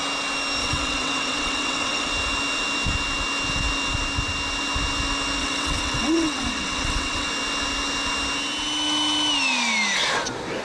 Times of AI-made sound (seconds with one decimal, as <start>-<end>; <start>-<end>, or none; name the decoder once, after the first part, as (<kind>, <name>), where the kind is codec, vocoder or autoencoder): 0.6-2.1 (vocoder, WaveNeXt); 5.4-7.3